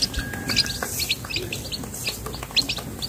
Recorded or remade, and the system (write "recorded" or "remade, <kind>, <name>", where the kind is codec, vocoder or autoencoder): recorded